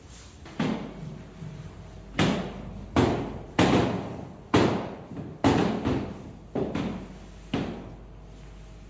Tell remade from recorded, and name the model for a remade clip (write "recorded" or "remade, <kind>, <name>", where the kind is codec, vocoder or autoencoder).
recorded